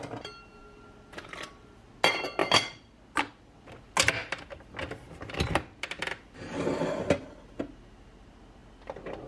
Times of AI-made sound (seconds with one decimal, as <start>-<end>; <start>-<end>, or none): none